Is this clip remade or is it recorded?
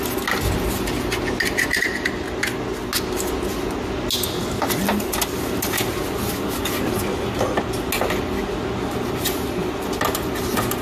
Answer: recorded